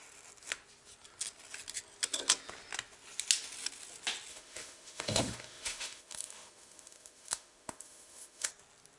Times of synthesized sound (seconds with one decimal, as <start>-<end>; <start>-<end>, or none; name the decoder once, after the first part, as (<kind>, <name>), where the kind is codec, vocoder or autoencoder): 4.3-8.5 (autoencoder, DAC-VAE)